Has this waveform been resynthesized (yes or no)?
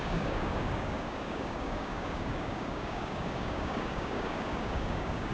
yes